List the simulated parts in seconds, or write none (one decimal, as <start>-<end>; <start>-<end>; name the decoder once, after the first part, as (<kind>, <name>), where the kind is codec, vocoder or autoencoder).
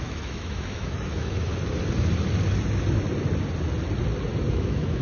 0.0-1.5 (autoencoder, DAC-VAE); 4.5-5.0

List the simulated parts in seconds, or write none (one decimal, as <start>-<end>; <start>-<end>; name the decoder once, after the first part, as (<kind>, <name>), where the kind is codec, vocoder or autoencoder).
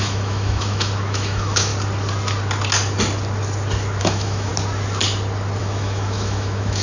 0.0-1.7 (autoencoder, DAC-VAE); 4.0-4.5; 5.6-6.8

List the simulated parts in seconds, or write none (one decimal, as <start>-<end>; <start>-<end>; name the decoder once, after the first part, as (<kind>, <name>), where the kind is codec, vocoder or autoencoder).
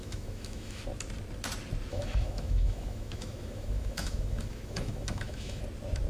0.0-0.8 (autoencoder, DAC-VAE); 1.9-5.6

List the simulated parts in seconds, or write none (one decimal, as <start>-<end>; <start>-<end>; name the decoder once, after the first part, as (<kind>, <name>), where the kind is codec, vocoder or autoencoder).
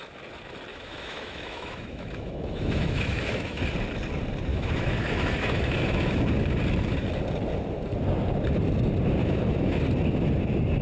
0.7-3.6 (autoencoder, DAC-VAE); 4.5-6.2; 9.2-9.8